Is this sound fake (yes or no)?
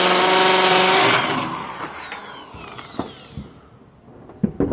no